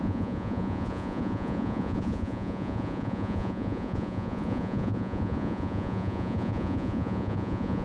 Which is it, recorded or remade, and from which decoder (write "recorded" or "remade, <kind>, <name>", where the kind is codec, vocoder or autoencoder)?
remade, vocoder, Vocos